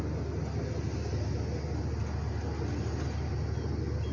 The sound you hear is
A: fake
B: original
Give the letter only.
B